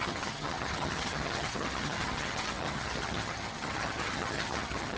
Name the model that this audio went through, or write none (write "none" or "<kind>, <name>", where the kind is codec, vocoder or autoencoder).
vocoder, HiFi-GAN